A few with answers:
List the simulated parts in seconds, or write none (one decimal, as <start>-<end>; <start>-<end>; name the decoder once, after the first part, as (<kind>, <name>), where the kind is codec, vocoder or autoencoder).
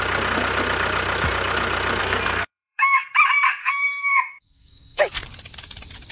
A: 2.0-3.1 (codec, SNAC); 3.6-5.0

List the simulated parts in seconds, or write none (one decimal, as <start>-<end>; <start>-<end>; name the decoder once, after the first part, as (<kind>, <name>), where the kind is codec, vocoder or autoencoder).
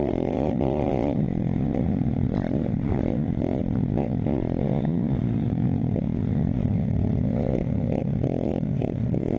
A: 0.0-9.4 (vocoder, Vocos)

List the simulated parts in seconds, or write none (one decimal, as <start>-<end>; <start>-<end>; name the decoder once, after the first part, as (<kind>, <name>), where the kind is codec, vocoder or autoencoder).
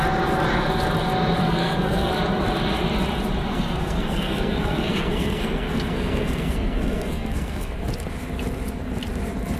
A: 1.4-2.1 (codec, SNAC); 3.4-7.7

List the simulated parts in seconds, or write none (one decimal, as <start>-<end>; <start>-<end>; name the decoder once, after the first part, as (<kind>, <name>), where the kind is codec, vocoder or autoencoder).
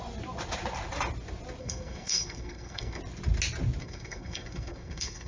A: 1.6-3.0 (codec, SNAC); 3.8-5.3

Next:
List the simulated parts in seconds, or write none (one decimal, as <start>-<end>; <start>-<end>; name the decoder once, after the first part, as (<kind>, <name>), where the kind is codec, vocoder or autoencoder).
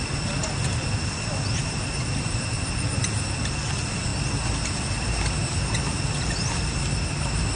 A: none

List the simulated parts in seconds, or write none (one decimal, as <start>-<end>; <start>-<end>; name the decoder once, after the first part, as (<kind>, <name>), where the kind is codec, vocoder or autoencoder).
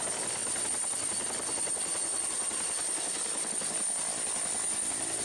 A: none